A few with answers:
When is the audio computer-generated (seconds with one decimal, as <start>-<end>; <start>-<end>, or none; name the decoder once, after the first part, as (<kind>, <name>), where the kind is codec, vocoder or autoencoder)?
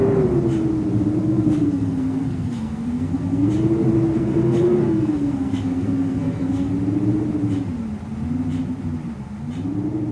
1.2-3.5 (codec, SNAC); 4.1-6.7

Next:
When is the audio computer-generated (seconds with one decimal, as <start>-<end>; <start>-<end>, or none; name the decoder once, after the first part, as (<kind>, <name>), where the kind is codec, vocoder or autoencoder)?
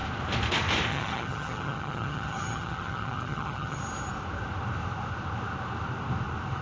0.9-3.8 (vocoder, HiFi-GAN)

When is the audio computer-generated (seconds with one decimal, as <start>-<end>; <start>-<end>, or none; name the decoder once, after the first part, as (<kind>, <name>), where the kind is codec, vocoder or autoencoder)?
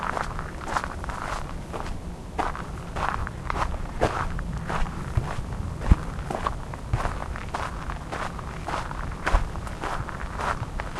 3.2-5.4 (vocoder, BigVGAN v2)